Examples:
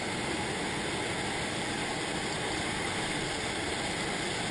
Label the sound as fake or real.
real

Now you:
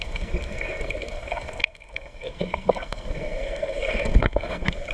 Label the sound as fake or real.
fake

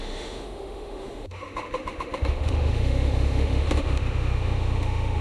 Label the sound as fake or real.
fake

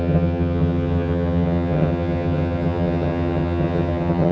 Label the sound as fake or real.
fake